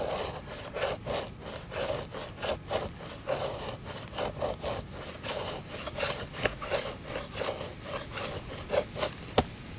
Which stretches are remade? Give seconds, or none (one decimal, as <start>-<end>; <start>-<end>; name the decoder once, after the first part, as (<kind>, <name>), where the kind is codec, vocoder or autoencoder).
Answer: 8.1-9.4 (vocoder, BigVGAN v2)